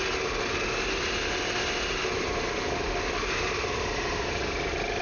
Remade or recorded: recorded